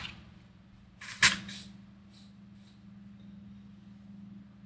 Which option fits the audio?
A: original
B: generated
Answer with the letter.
A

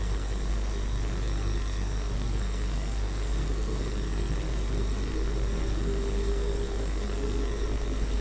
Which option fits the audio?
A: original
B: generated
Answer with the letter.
B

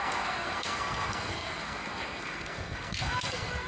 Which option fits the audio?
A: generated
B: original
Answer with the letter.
A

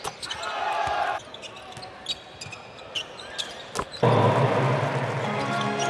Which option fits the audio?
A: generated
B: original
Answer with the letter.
B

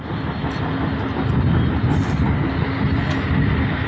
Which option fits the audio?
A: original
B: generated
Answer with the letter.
A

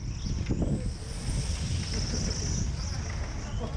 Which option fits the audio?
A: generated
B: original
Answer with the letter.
B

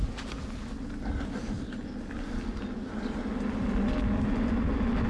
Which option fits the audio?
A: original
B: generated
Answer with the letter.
A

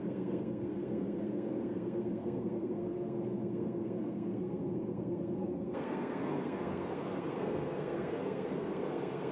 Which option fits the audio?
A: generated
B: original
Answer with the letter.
A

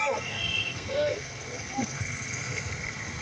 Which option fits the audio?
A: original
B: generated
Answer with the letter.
B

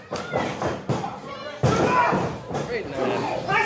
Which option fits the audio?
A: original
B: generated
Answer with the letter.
A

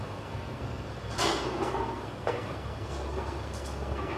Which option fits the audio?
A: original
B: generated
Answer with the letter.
B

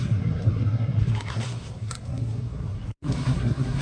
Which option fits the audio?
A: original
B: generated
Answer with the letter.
B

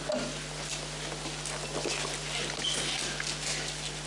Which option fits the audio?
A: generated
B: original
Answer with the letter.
B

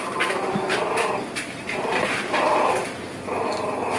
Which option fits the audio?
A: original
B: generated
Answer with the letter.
A